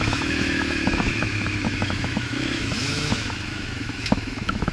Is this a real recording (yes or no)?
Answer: no